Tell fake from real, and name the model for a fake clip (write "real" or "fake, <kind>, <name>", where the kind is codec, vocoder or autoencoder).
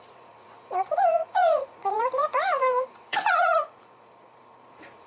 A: fake, vocoder, Vocos